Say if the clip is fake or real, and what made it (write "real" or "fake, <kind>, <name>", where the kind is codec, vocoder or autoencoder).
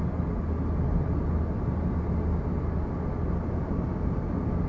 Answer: real